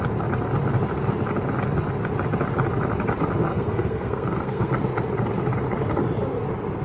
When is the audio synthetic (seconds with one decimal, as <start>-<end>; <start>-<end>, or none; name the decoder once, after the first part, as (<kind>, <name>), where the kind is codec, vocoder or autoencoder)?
3.5-4.7 (codec, SNAC)